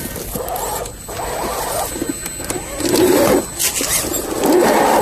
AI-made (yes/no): no